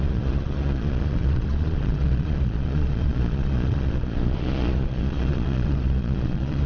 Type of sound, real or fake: fake